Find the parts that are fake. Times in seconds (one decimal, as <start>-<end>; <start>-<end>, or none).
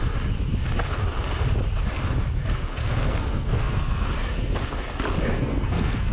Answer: 2.8-4.1; 5.3-6.1